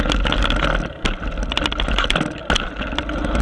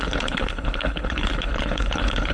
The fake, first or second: second